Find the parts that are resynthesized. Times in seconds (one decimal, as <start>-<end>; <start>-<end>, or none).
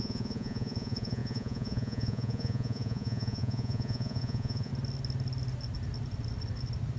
0.0-4.7